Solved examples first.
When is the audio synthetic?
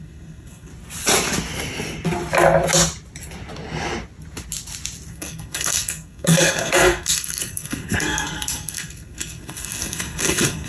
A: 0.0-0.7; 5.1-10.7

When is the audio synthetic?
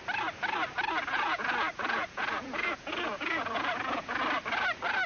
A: 1.1-4.2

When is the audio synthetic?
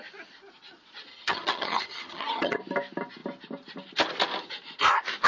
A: 1.1-2.6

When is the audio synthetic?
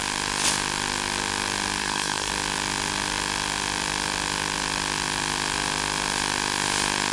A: 1.8-2.3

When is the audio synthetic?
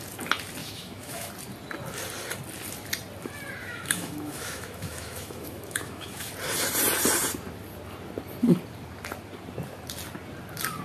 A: 0.6-1.3; 3.6-6.3